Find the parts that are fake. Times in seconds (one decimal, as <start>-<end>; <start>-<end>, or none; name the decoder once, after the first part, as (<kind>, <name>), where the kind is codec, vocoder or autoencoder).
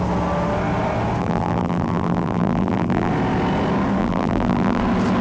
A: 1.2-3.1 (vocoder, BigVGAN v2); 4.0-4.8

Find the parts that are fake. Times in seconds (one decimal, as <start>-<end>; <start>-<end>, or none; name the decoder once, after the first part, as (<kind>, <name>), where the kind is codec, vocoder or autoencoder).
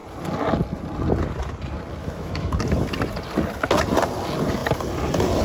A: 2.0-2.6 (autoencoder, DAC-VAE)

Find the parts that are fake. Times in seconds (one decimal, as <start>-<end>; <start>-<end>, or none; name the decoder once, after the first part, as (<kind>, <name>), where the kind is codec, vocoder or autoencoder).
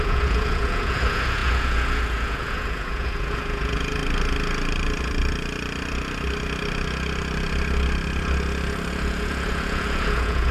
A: 0.0-4.0 (vocoder, Vocos); 8.9-10.5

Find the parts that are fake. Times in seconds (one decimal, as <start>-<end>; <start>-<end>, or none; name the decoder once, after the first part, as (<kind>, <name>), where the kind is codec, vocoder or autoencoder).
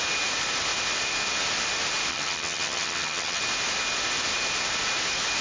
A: 2.1-3.4 (vocoder, HiFi-GAN)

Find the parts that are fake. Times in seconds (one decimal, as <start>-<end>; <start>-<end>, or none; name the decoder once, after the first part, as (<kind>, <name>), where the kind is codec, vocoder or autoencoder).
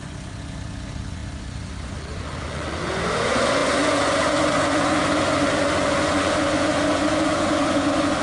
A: 0.0-8.2 (vocoder, Vocos)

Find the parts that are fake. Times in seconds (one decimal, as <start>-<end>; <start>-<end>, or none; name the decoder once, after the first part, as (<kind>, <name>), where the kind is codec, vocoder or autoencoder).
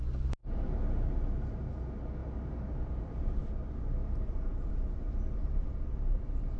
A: 0.4-1.7 (vocoder, BigVGAN v2); 2.2-3.3; 4.0-4.7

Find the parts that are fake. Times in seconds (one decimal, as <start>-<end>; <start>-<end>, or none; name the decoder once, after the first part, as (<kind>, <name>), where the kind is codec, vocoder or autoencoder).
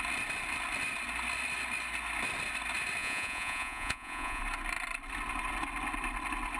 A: 3.0-4.4 (vocoder, Vocos)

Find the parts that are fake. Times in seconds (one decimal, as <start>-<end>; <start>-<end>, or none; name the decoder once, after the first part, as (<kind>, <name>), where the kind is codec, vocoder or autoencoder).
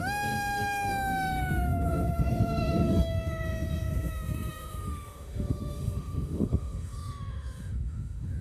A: 0.0-8.4 (autoencoder, DAC-VAE)